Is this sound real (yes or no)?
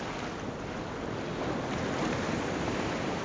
yes